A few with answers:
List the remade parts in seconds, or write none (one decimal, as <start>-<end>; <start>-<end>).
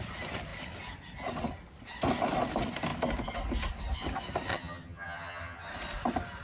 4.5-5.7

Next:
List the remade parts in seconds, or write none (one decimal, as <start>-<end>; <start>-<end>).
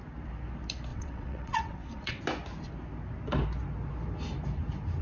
0.9-2.2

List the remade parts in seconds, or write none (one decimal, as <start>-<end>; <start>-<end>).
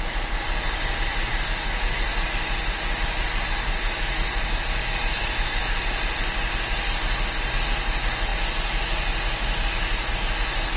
4.8-5.6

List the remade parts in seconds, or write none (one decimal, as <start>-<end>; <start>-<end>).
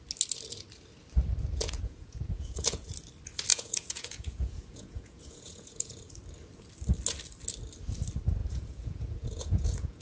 1.5-2.9; 3.5-6.1; 8.4-10.0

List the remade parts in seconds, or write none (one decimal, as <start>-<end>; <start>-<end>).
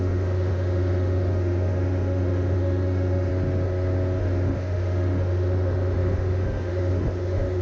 0.0-3.3; 4.2-7.6